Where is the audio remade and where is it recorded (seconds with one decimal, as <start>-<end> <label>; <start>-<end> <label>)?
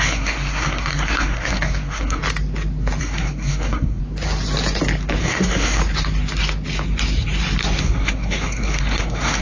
0.0-2.2 remade; 2.2-3.0 recorded; 3.0-4.0 remade; 4.0-5.2 recorded; 5.2-5.8 remade; 5.8-7.8 recorded; 7.8-9.4 remade